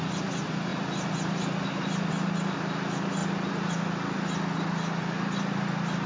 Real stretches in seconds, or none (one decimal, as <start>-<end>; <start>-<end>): 0.0-6.1